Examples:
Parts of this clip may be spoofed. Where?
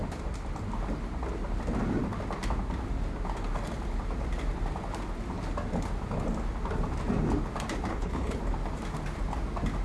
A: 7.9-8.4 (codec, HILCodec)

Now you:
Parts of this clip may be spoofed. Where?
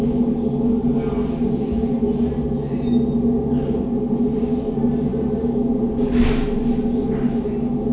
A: none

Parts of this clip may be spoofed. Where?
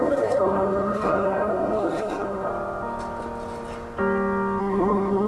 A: 0.0-2.5 (codec, SNAC); 4.6-5.3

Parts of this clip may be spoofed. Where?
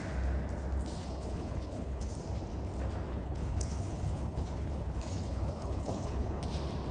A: 1.0-2.1 (codec, HILCodec); 3.1-6.4